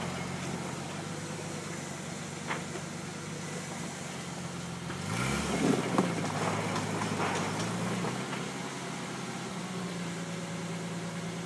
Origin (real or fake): real